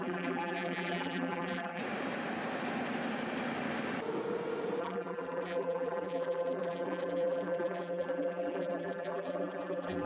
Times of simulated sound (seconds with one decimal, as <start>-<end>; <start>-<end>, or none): 0.0-1.8; 4.8-10.1